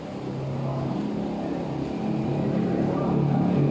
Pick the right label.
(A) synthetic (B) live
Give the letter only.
B